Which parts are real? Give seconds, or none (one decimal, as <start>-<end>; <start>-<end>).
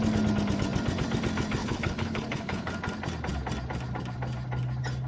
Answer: 0.0-1.6; 2.7-5.1